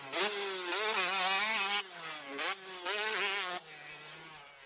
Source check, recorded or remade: recorded